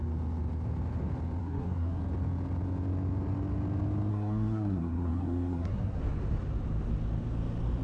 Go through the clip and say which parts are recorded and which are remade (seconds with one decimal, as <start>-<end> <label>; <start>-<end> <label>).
0.0-1.4 recorded; 1.4-2.0 remade; 2.0-4.1 recorded; 4.1-6.0 remade; 6.0-7.8 recorded